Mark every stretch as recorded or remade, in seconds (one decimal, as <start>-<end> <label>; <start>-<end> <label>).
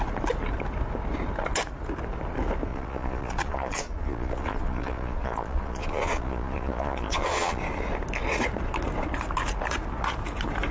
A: 0.0-2.7 recorded; 2.7-7.6 remade; 7.6-10.7 recorded